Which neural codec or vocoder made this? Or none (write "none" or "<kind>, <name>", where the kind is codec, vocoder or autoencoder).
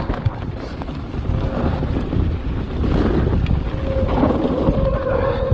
none